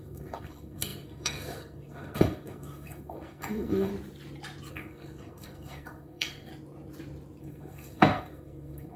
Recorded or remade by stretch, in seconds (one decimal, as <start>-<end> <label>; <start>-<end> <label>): 0.0-3.9 remade; 3.9-4.7 recorded; 4.7-6.5 remade; 6.5-7.4 recorded; 7.4-9.0 remade